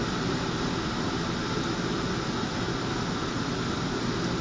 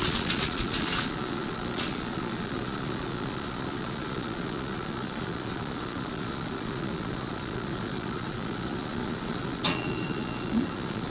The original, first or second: first